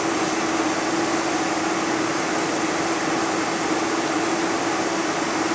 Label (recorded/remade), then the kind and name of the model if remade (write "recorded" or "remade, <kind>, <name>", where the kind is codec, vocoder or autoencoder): recorded